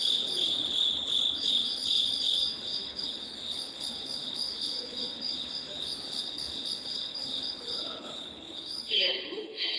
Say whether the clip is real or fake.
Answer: fake